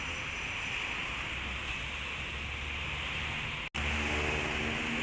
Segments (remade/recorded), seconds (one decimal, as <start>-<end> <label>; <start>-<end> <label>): 0.0-5.0 recorded